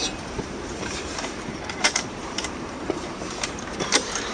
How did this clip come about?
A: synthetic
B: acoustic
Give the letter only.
A